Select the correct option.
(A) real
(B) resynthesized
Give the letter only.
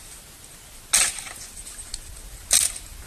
A